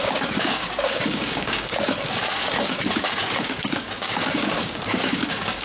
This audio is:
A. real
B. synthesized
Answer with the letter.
B